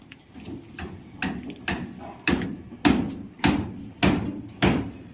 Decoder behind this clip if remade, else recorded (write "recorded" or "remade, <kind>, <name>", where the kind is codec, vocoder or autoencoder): recorded